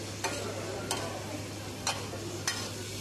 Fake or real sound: real